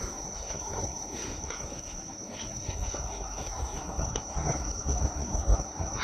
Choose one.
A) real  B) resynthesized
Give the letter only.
B